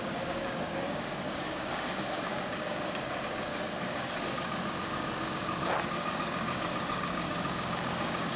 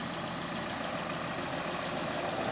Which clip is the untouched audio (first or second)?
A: second